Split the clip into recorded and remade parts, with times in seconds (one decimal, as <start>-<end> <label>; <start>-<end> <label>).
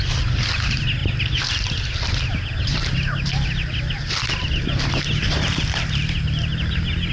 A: 0.0-7.1 recorded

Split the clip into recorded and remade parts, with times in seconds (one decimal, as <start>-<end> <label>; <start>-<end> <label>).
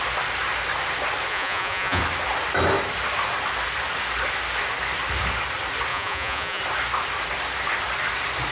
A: 0.0-1.3 recorded; 1.3-2.0 remade; 2.0-5.9 recorded; 5.9-6.6 remade; 6.6-8.5 recorded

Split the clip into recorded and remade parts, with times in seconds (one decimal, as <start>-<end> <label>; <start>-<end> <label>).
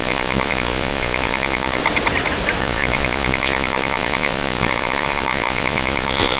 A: 0.0-1.8 remade; 1.8-2.6 recorded; 2.6-6.4 remade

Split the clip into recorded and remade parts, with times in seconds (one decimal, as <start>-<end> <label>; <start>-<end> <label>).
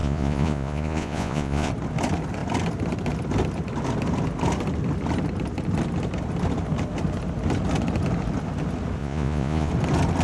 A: 0.0-1.7 remade; 1.7-9.0 recorded; 9.0-9.7 remade; 9.7-10.2 recorded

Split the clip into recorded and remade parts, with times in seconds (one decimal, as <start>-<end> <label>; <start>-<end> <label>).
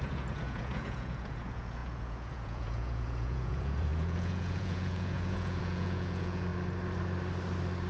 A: 0.0-6.5 remade; 6.5-7.9 recorded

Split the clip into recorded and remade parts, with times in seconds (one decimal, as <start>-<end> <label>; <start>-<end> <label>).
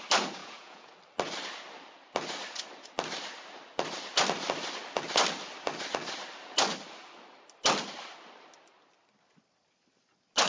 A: 0.0-0.4 recorded; 0.4-0.9 remade; 0.9-10.5 recorded